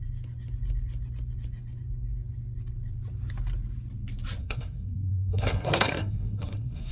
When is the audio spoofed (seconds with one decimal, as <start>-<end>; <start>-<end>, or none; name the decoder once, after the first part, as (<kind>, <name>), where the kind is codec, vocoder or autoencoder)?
4.4-6.9 (codec, SNAC)